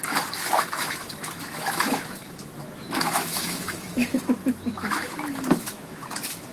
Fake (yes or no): yes